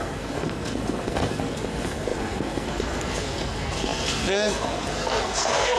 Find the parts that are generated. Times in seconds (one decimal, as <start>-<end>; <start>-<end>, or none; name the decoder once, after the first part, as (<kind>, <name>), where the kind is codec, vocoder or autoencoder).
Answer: 0.0-5.8 (codec, SNAC)